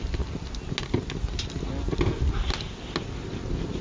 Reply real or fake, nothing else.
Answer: real